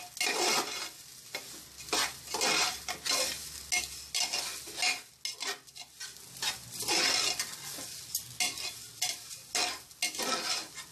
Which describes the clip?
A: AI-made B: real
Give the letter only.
B